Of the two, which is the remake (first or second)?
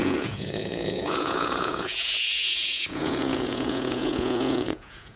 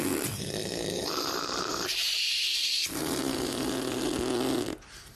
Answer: first